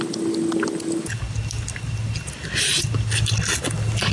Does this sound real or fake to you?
real